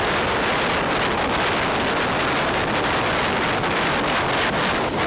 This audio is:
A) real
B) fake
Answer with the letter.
A